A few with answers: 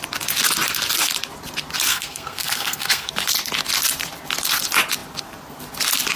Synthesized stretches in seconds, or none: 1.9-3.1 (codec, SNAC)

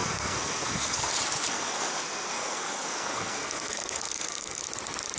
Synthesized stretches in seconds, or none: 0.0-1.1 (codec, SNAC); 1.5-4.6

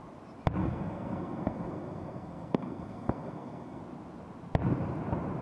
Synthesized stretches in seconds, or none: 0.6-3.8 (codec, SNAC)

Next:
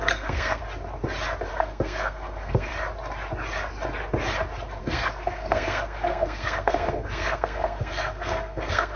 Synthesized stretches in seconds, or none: 0.0-0.6 (codec, SNAC); 1.5-2.7; 4.8-9.0

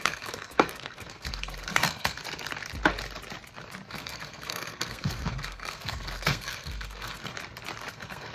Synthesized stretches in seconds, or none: 0.0-2.2 (codec, SNAC); 3.9-7.3; 7.9-8.3

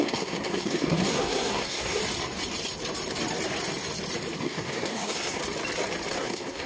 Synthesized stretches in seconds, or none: 0.0-2.0 (codec, SNAC); 4.4-5.4; 6.1-6.7

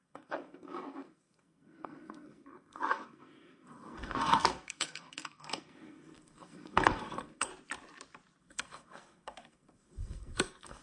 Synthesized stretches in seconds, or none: 0.0-7.5 (codec, SNAC); 8.4-10.8